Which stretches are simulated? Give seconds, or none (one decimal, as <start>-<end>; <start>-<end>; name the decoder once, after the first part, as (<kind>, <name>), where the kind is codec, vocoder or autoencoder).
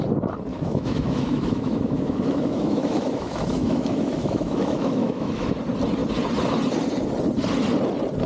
0.5-5.5 (autoencoder, DAC-VAE)